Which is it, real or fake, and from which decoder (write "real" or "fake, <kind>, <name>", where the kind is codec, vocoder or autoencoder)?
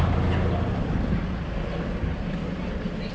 real